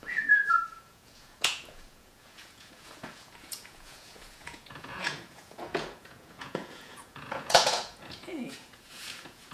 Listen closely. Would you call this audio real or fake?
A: fake